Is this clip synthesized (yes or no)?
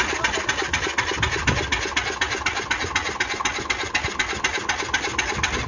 no